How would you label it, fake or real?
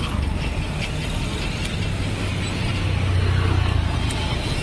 real